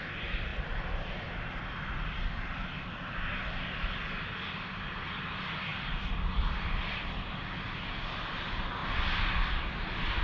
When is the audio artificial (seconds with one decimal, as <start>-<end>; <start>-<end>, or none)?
none